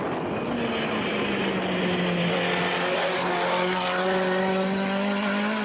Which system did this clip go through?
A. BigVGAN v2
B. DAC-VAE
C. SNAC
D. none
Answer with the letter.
D